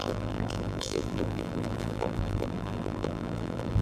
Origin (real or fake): fake